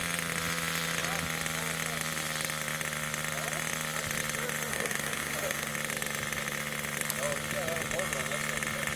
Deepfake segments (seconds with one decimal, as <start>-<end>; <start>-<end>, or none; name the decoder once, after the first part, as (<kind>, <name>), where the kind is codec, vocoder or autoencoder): 4.7-5.7 (autoencoder, DAC-VAE)